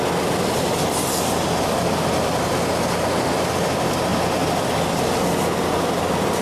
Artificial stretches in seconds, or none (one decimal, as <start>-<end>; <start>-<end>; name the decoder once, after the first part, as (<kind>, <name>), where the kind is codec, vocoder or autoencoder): none